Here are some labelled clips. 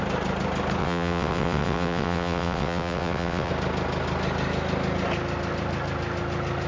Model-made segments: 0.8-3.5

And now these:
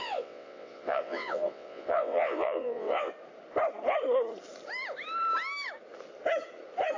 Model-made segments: 0.0-3.1

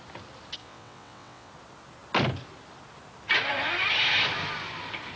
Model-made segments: 0.6-1.5

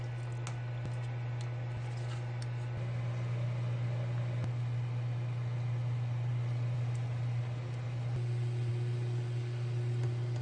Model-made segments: none

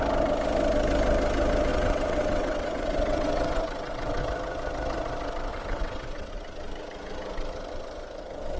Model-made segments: 1.7-4.2; 5.5-6.3